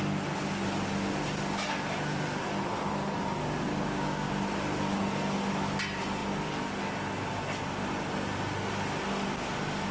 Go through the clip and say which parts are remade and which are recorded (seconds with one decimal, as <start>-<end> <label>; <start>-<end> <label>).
0.0-3.7 recorded; 3.7-4.3 remade; 4.3-9.9 recorded